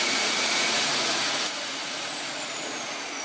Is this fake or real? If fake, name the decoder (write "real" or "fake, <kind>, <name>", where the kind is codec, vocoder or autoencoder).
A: fake, vocoder, Vocos